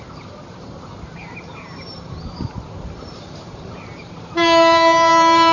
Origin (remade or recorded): remade